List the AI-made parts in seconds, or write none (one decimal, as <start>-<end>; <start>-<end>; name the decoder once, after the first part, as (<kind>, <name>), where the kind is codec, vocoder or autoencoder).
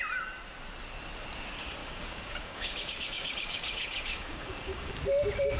1.8-4.9 (codec, DAC)